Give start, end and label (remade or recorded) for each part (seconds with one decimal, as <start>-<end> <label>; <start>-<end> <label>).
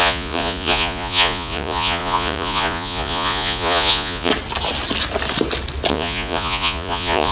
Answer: 0.0-4.3 remade; 4.3-5.9 recorded; 5.9-7.3 remade